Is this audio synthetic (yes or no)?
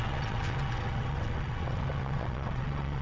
yes